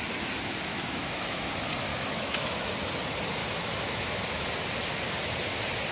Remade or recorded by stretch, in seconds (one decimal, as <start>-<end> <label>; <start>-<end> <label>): 0.0-0.7 recorded; 0.7-1.5 remade; 1.5-1.9 recorded; 1.9-2.6 remade; 2.6-3.4 recorded; 3.4-4.5 remade; 4.5-5.9 recorded